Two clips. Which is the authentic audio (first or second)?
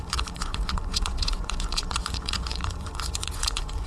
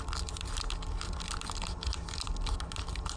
second